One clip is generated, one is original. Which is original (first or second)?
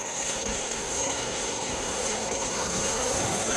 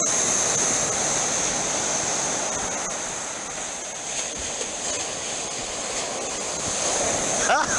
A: second